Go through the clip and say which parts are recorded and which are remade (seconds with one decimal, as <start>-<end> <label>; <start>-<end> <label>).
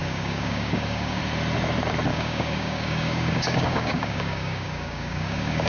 0.0-1.2 remade; 1.2-2.1 recorded; 2.1-5.7 remade